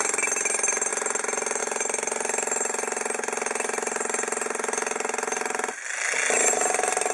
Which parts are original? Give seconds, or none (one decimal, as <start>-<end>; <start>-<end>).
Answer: 0.0-7.1